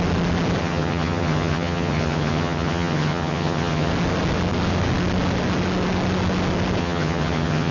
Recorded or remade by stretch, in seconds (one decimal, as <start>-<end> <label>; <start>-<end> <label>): 0.0-0.6 recorded; 0.6-3.9 remade; 3.9-6.8 recorded; 6.8-7.7 remade